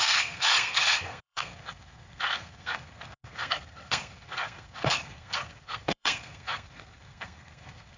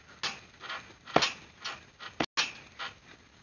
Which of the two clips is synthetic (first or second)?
first